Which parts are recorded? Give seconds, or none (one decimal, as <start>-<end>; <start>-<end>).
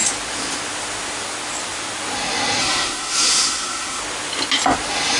0.0-2.6; 4.0-5.2